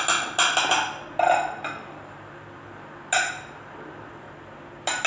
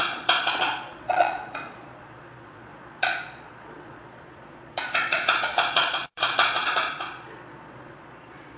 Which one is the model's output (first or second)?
second